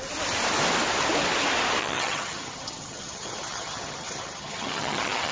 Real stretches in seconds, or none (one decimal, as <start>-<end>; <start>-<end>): 0.0-1.8